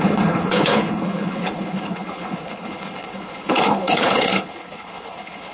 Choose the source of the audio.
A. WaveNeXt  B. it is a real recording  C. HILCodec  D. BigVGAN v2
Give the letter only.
C